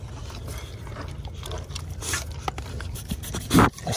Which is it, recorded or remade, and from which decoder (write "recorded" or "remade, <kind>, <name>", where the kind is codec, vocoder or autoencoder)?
recorded